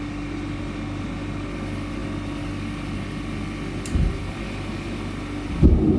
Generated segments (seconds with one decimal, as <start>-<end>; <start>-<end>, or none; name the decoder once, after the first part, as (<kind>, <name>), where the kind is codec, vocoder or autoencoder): none